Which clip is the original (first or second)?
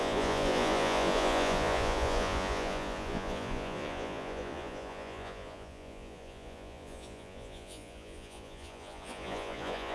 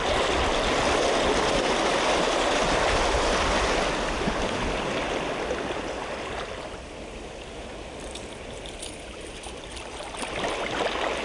second